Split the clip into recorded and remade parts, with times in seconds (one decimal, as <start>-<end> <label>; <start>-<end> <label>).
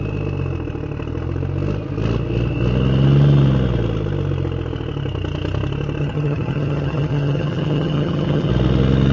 0.0-6.0 recorded; 6.0-8.5 remade; 8.5-9.1 recorded